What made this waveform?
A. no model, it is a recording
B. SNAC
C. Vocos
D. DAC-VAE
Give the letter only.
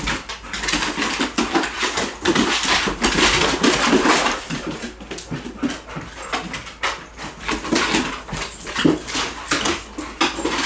A